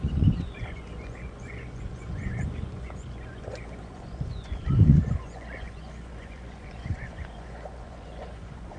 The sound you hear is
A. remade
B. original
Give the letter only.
A